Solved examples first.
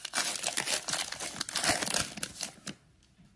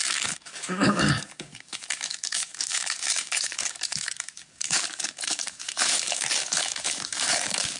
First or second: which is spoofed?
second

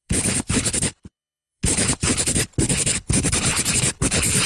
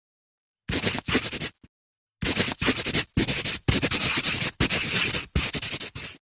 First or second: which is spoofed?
first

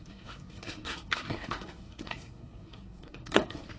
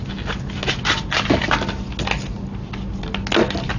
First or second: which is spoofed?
first